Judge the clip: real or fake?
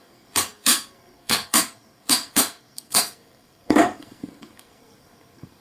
fake